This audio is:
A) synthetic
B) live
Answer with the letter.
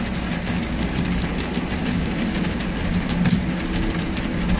B